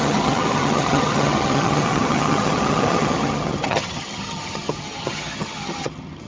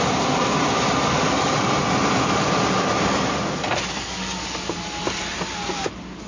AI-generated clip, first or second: first